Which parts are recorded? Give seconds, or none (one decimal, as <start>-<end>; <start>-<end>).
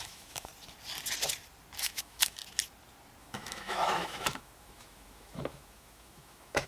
0.5-1.8; 2.4-3.2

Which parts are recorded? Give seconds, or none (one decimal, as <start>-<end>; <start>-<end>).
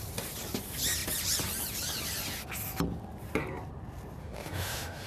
0.0-4.2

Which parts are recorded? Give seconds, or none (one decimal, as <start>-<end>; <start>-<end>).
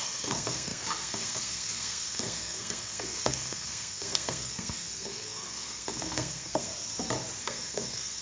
6.7-7.4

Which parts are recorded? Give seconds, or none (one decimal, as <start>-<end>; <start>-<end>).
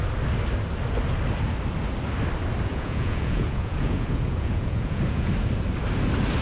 0.0-2.7; 5.3-6.4